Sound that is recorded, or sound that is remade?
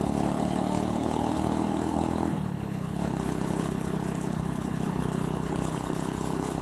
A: remade